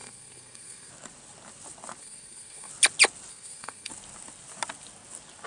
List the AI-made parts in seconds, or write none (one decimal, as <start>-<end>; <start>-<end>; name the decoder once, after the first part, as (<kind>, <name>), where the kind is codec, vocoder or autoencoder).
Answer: 0.0-0.9 (codec, SNAC); 2.0-2.7; 3.3-3.9